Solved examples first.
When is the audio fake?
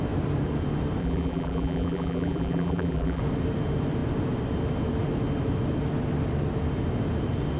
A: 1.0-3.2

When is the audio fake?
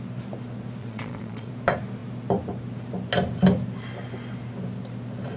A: 0.8-1.5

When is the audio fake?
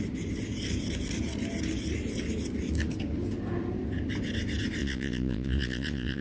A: 4.8-6.2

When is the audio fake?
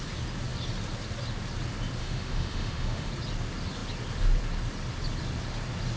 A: 2.0-3.1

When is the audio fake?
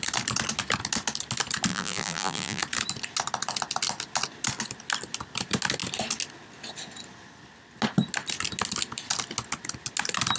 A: 1.7-2.6